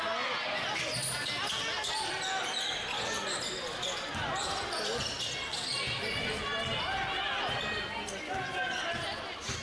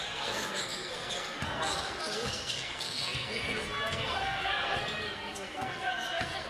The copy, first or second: second